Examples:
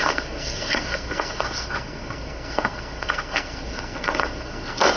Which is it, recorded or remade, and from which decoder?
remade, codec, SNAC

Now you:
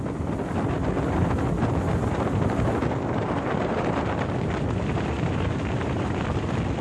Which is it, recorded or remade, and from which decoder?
recorded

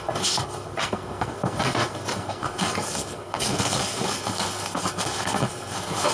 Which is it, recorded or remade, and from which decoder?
remade, codec, SNAC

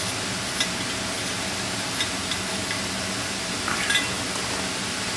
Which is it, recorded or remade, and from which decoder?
recorded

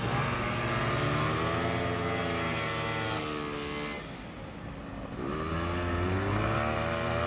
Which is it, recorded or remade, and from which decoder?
recorded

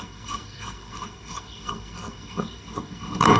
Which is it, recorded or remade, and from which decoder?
remade, codec, SNAC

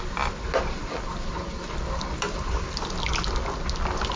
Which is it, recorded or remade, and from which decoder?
recorded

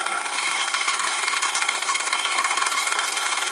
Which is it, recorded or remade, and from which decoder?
remade, codec, SNAC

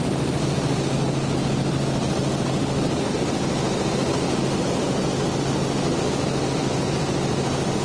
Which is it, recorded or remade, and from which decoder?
recorded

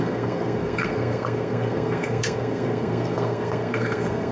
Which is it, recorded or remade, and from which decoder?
remade, codec, SNAC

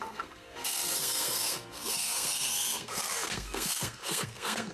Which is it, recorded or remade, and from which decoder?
remade, codec, SNAC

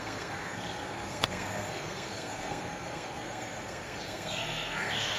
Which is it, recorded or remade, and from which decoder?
remade, codec, SNAC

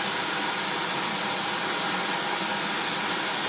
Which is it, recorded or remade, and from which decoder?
recorded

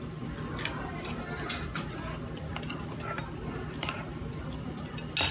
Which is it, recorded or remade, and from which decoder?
recorded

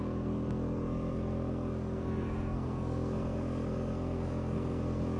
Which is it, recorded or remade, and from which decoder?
remade, codec, SNAC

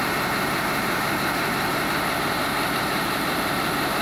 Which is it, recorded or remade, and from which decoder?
recorded